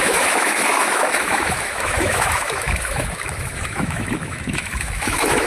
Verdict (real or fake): fake